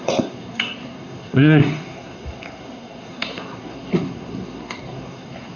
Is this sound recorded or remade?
remade